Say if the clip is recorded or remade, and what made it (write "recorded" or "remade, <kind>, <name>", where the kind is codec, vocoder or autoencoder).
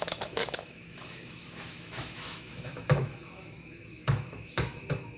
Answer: remade, autoencoder, DAC-VAE